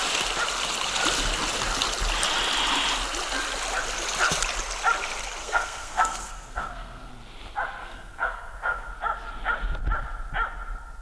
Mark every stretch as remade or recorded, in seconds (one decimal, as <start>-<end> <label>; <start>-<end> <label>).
0.0-5.4 recorded; 5.4-7.1 remade; 7.1-7.8 recorded; 7.8-8.9 remade; 8.9-11.0 recorded